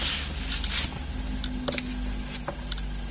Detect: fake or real real